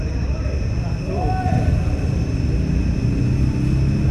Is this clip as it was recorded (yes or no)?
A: yes